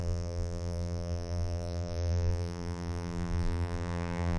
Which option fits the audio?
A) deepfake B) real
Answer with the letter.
A